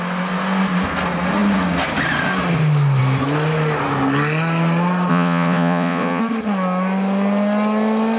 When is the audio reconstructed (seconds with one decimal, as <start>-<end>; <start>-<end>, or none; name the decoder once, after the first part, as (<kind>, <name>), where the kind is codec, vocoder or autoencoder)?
5.1-6.2 (vocoder, Vocos)